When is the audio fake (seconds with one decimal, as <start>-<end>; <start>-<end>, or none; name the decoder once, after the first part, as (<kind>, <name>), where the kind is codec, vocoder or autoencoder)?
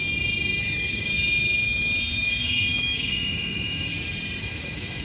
0.6-3.9 (autoencoder, DAC-VAE); 4.4-5.0